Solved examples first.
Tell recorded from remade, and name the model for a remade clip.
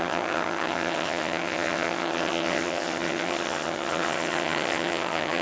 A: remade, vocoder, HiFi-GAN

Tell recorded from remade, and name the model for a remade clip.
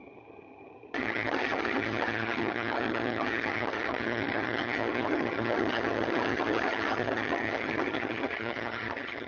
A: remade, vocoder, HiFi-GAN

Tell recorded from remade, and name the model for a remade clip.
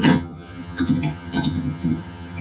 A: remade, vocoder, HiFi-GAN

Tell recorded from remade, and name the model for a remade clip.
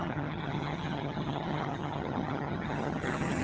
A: remade, vocoder, HiFi-GAN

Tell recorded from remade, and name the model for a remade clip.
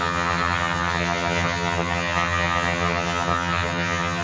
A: remade, vocoder, HiFi-GAN